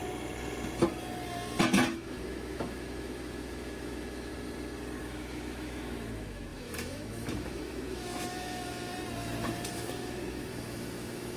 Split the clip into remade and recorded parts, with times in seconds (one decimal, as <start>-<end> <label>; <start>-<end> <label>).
0.0-1.9 recorded; 1.9-4.3 remade; 4.3-5.0 recorded; 5.0-8.9 remade; 8.9-9.7 recorded; 9.7-11.4 remade